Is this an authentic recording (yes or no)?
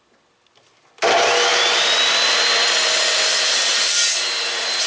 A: yes